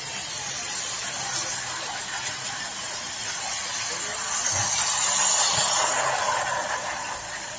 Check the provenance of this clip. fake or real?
real